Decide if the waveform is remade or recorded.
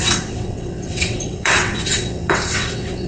remade